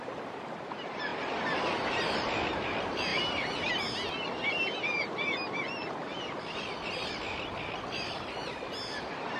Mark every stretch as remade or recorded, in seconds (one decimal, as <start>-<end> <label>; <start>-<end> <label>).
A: 0.0-1.1 recorded; 1.1-2.5 remade; 2.5-3.1 recorded; 3.1-3.7 remade; 3.7-6.0 recorded; 6.0-8.0 remade; 8.0-9.4 recorded